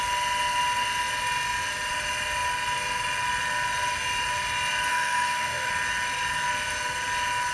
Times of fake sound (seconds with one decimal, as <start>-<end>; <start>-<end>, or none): 4.9-5.7